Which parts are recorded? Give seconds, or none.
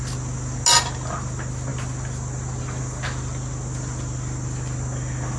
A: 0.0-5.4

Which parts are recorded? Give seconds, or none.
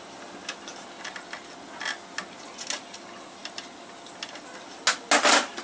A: 0.0-5.6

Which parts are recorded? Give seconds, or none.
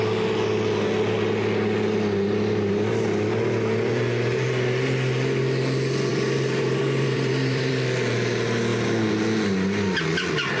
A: 0.0-6.1; 7.7-10.6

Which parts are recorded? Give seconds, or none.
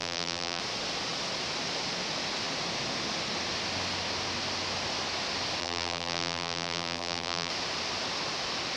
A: 0.6-5.6; 7.5-8.8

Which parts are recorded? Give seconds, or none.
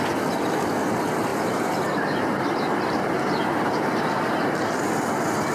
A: 0.0-1.3; 4.6-5.5